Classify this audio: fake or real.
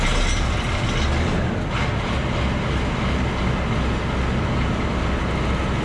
real